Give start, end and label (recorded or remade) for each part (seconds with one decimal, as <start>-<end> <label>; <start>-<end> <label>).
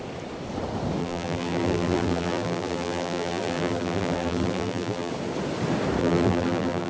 0.0-1.0 recorded; 1.0-5.1 remade; 5.1-6.0 recorded; 6.0-6.9 remade